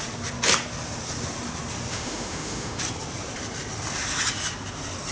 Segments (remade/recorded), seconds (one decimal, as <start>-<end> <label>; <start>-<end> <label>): 0.0-1.9 recorded; 1.9-2.8 remade; 2.8-5.1 recorded